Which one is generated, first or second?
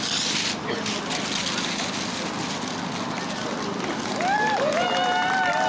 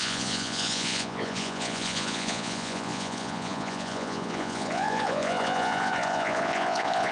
second